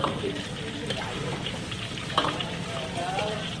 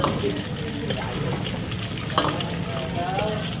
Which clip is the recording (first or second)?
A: second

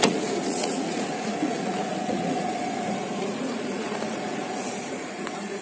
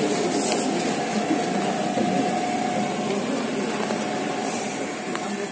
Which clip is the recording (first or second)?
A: second